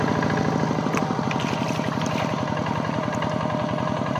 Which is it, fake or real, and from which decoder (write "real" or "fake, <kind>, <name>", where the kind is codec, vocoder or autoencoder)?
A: real